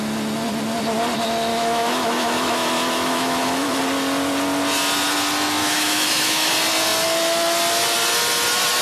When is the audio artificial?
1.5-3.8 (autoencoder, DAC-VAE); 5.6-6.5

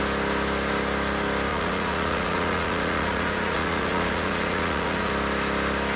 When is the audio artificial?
1.5-5.1 (vocoder, Vocos)

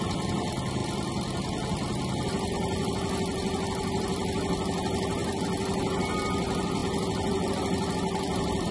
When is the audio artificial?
none

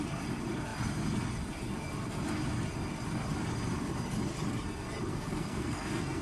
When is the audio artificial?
5.1-6.2 (codec, SNAC)